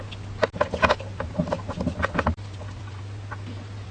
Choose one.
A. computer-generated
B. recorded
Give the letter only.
B